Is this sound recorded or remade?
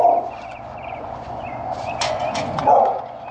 remade